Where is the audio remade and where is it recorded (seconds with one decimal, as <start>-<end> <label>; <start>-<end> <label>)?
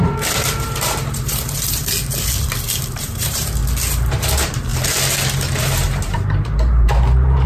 0.0-1.8 remade; 1.8-3.0 recorded; 3.0-3.6 remade; 3.6-4.1 recorded; 4.1-4.7 remade; 4.7-5.6 recorded; 5.6-7.5 remade